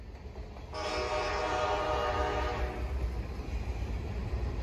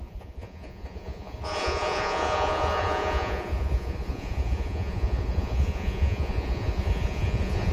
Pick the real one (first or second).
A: first